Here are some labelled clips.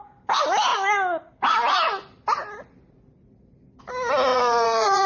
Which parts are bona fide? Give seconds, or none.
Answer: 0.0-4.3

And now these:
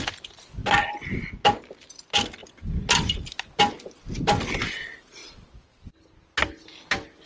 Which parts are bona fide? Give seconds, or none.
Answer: 0.0-7.3

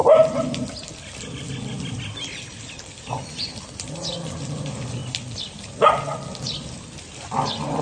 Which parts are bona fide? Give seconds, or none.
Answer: 0.0-7.8